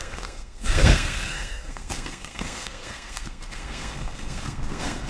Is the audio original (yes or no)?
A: no